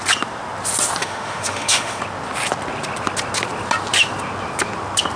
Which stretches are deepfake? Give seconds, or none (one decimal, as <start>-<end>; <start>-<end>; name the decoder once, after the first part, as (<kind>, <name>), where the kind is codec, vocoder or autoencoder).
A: 1.0-2.0 (autoencoder, DAC-VAE)